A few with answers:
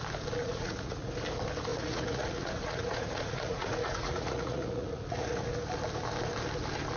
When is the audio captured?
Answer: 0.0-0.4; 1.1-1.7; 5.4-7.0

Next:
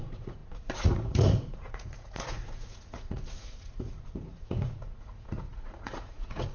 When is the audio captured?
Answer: none

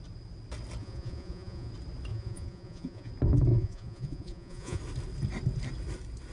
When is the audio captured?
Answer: 0.0-0.8; 1.7-2.1; 3.1-3.5; 4.8-6.3

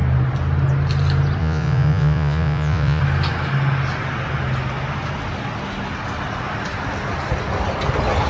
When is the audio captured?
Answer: 0.0-1.4; 3.0-8.3

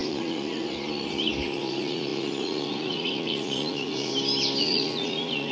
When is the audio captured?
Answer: 4.1-4.6

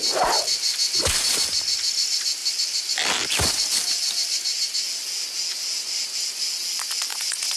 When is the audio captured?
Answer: 0.0-7.1